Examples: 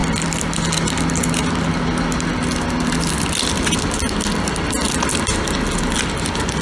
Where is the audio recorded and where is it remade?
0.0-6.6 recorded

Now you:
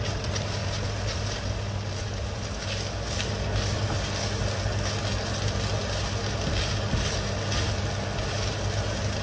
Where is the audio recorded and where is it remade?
0.0-9.2 recorded

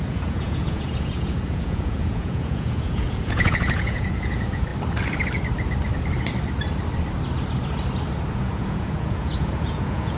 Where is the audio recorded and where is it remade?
0.0-4.7 remade; 4.7-8.3 recorded; 8.3-10.2 remade

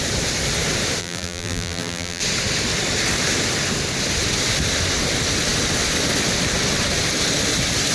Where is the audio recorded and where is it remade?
0.0-1.0 recorded; 1.0-2.2 remade; 2.2-7.9 recorded